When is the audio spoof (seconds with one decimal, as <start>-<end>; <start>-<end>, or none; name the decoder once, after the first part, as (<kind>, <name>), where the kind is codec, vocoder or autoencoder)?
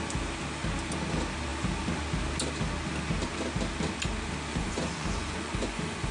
4.5-6.1 (vocoder, Vocos)